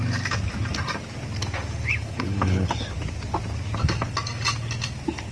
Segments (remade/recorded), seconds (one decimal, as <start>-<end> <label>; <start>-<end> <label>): 0.0-2.0 recorded; 2.0-2.8 remade; 2.8-5.3 recorded